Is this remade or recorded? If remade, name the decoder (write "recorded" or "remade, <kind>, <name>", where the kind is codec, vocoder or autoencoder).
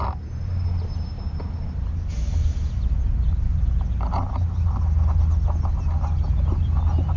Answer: recorded